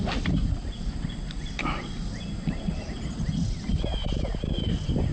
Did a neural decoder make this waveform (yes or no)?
no